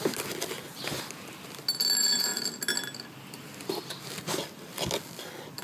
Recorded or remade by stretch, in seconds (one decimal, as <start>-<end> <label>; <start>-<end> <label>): 0.0-5.6 recorded